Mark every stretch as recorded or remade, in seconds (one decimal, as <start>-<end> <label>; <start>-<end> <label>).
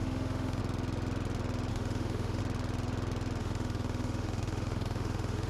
0.0-0.6 remade; 0.6-1.7 recorded; 1.7-2.4 remade; 2.4-3.4 recorded; 3.4-5.5 remade